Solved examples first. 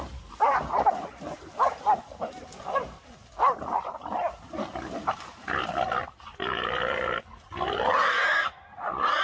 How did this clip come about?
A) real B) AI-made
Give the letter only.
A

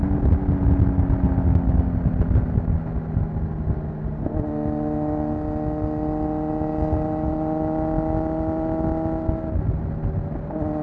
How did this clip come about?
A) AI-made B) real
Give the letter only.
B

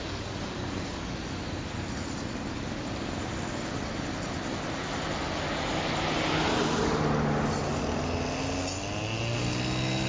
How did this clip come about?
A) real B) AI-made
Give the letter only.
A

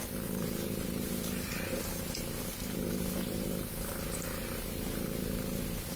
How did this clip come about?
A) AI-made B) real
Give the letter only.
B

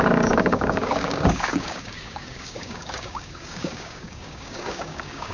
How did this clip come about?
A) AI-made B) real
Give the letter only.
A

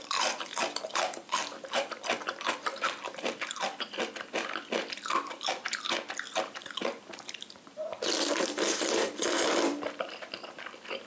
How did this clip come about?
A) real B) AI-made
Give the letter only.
B